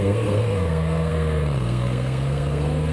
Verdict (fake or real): fake